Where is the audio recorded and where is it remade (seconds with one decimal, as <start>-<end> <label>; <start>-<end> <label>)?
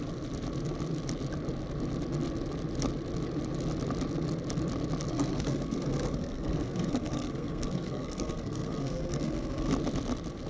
0.0-5.1 recorded; 5.1-9.7 remade; 9.7-10.5 recorded